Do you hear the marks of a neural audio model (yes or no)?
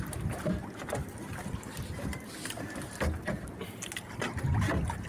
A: no